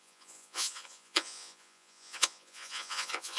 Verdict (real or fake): fake